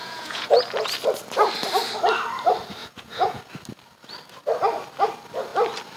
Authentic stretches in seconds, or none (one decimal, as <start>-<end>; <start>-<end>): 0.6-2.8; 3.4-6.0